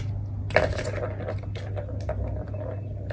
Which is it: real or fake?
real